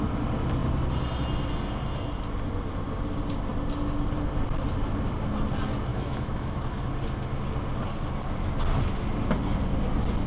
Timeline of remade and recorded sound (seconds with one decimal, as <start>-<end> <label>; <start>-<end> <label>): 0.0-5.9 recorded; 5.9-6.8 remade; 6.8-10.3 recorded